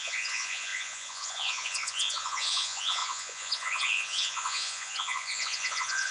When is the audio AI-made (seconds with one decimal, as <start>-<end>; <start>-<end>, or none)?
0.0-6.1